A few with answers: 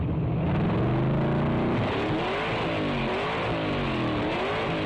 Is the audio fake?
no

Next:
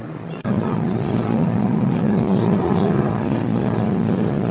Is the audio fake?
yes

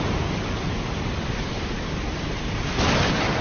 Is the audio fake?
no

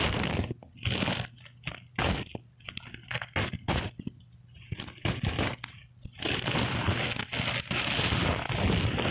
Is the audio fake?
no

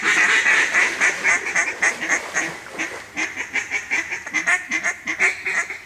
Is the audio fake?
no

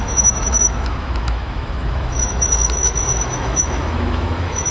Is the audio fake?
yes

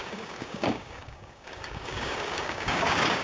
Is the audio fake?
yes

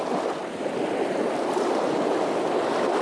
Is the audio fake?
no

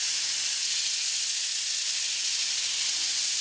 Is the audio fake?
no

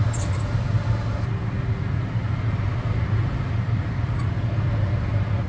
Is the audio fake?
no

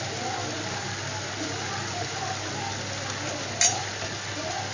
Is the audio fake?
no